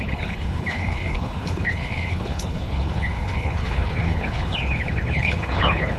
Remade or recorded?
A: remade